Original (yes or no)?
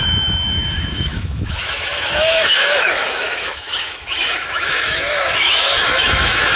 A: no